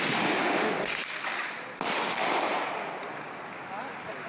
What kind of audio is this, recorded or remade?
recorded